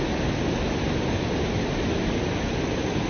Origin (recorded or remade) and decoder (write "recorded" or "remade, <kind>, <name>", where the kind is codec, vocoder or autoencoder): recorded